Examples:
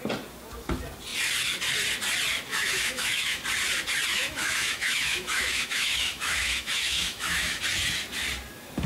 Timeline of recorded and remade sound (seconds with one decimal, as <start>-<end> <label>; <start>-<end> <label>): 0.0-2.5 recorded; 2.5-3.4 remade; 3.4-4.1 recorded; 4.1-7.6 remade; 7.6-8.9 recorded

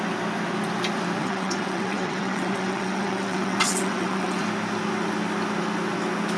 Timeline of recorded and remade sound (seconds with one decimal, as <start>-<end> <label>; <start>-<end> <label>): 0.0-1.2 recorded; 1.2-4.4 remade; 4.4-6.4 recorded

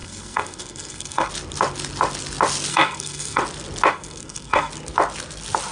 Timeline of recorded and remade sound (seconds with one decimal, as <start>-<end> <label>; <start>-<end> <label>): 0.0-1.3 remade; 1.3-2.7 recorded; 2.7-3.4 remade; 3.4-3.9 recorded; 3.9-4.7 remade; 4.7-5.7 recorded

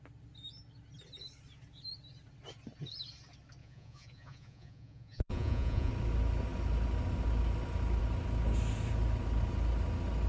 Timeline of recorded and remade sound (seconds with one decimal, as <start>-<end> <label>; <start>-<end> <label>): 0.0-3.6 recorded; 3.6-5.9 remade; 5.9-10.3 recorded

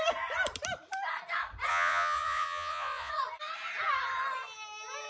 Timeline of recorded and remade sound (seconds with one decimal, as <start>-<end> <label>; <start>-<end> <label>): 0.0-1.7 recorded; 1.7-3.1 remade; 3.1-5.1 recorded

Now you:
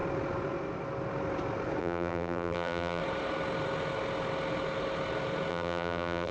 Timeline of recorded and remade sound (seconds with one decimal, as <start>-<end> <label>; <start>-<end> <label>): 0.0-1.8 recorded; 1.8-3.0 remade; 3.0-5.5 recorded; 5.5-6.3 remade

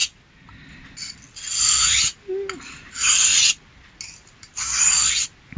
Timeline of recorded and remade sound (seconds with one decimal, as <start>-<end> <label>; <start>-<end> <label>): 0.0-5.6 recorded

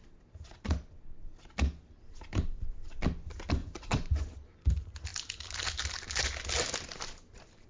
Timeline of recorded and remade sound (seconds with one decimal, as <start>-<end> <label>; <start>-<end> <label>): 0.0-3.6 recorded; 3.6-4.3 remade; 4.3-7.7 recorded